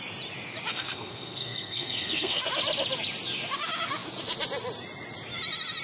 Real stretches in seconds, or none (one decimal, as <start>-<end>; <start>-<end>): 0.0-0.7; 2.4-5.8